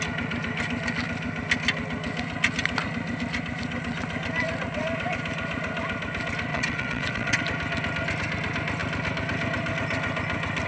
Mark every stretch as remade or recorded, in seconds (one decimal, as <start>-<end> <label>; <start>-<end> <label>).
0.0-6.5 recorded; 6.5-7.4 remade; 7.4-10.7 recorded